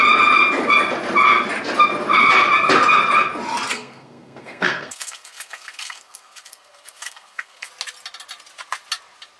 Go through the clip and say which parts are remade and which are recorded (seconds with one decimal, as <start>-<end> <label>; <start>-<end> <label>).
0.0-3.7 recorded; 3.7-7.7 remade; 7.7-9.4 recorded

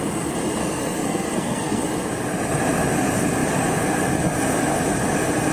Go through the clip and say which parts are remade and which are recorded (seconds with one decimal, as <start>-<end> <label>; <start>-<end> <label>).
0.0-0.6 recorded; 0.6-1.8 remade; 1.8-5.5 recorded

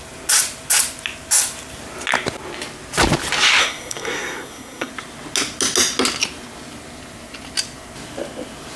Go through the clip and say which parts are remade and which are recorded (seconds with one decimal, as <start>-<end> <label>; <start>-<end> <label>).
0.0-3.6 recorded; 3.6-4.9 remade; 4.9-8.8 recorded

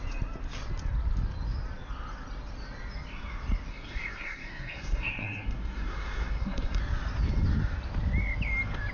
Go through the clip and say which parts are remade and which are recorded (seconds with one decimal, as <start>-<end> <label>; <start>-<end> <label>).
0.0-3.7 recorded; 3.7-6.8 remade; 6.8-8.9 recorded

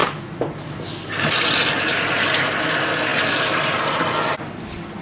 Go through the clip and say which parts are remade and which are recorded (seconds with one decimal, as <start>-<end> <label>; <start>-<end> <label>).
0.0-5.0 recorded

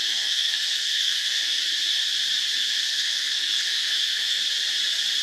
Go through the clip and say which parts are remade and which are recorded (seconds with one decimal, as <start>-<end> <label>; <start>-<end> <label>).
0.0-1.6 remade; 1.6-2.6 recorded; 2.6-4.4 remade; 4.4-5.2 recorded

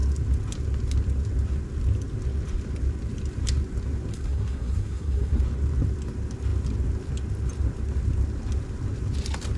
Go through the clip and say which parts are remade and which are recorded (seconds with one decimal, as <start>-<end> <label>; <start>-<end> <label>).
0.0-4.1 recorded; 4.1-5.4 remade; 5.4-9.6 recorded

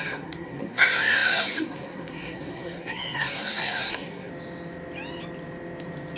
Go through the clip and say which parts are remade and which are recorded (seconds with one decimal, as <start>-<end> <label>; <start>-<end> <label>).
0.0-4.3 remade; 4.3-6.2 recorded